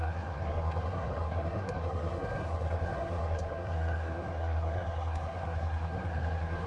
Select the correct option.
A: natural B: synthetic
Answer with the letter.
B